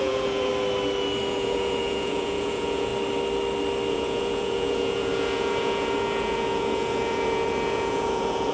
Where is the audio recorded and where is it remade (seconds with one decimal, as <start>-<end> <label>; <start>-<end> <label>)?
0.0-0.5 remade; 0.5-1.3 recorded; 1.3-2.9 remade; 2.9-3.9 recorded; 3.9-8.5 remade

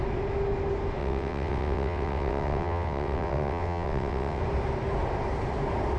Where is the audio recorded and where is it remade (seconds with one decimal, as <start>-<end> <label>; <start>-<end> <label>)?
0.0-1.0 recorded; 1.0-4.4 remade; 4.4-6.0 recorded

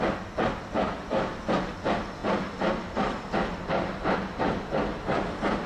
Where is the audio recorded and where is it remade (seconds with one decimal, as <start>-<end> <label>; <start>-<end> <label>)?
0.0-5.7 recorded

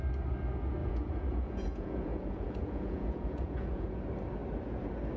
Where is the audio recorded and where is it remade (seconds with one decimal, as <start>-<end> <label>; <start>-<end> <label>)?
0.0-0.8 recorded; 0.8-3.9 remade; 3.9-5.2 recorded

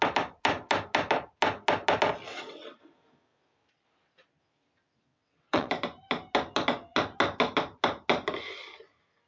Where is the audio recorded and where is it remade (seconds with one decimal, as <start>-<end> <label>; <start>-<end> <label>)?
0.0-2.3 recorded; 2.3-3.0 remade; 3.0-5.1 recorded; 5.1-5.7 remade; 5.7-9.3 recorded